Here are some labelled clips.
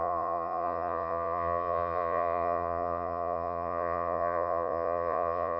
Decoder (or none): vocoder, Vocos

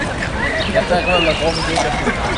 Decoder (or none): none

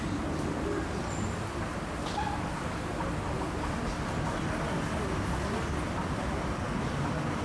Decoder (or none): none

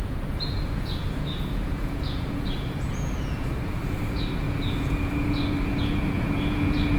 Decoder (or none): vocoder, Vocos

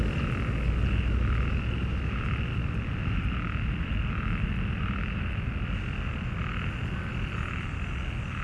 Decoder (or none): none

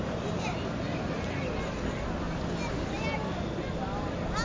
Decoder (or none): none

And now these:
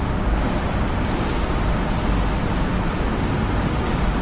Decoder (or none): none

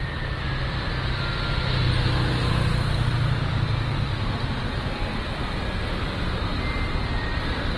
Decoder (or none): none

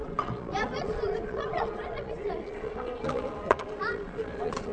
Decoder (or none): vocoder, Vocos